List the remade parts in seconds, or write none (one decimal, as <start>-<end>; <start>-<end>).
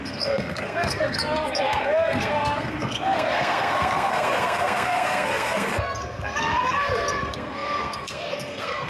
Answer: 0.0-8.9